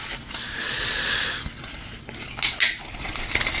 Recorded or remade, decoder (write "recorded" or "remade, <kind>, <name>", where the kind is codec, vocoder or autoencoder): recorded